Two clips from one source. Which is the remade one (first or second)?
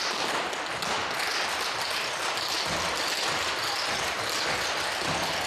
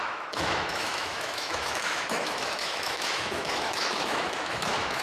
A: second